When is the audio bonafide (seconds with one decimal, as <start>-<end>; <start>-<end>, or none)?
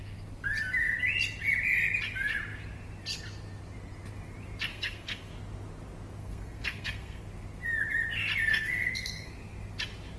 0.0-4.7; 5.3-6.2; 7.3-8.5; 9.3-10.2